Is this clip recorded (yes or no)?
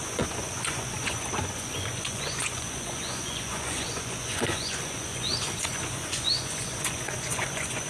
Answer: no